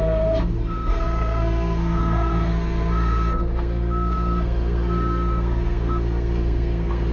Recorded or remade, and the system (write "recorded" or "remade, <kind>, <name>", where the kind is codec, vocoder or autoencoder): remade, codec, SNAC